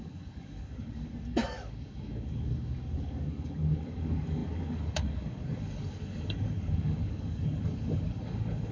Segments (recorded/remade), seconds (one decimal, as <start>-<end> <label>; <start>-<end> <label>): 0.0-8.7 remade